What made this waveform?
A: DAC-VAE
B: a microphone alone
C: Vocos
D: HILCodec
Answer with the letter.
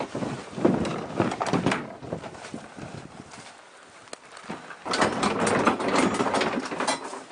B